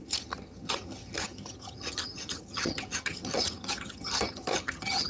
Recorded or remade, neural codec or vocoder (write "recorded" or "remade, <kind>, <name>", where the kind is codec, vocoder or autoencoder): remade, vocoder, HiFi-GAN